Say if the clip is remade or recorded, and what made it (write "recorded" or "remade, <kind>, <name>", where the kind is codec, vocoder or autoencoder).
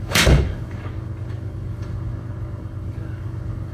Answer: remade, codec, DAC